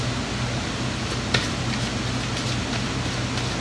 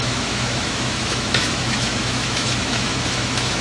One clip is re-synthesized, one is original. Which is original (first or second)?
first